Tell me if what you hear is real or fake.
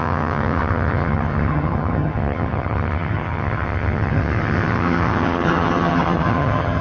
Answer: fake